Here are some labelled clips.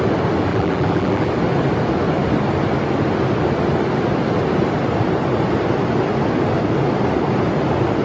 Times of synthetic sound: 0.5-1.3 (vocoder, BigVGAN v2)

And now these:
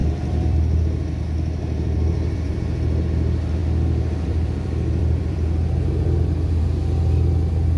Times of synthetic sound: 0.0-0.8 (vocoder, BigVGAN v2); 1.6-3.0; 3.6-6.6

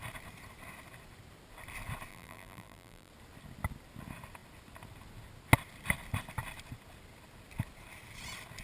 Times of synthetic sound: 2.1-3.1 (vocoder, BigVGAN v2)

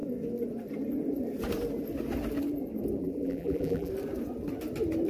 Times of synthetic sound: 3.0-3.9 (vocoder, BigVGAN v2)

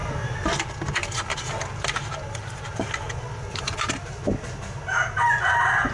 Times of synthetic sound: 1.7-2.7 (vocoder, BigVGAN v2); 3.5-4.2

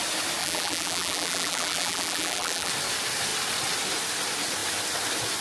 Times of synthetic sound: 0.4-2.7 (vocoder, BigVGAN v2)

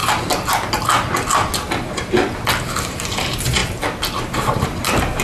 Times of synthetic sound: 2.6-3.6 (vocoder, BigVGAN v2); 4.2-5.2

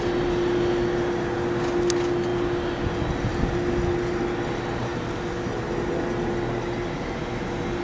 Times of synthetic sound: none